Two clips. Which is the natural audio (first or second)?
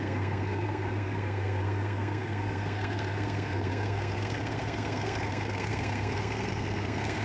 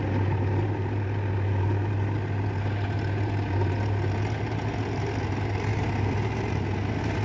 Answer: second